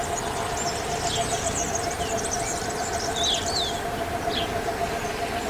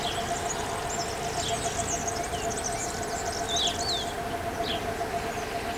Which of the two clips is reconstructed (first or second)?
first